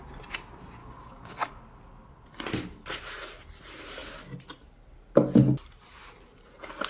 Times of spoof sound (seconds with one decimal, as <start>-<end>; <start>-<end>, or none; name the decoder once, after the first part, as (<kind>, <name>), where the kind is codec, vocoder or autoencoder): 0.8-1.6 (codec, DAC)